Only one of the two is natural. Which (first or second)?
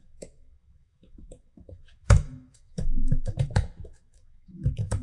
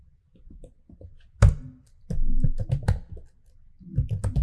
second